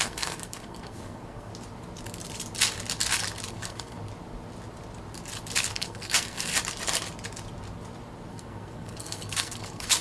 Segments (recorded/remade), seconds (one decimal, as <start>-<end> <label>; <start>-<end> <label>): 0.0-1.5 remade; 1.5-3.5 recorded; 3.5-4.0 remade; 4.0-5.7 recorded; 5.7-6.5 remade; 6.5-8.3 recorded; 8.3-10.0 remade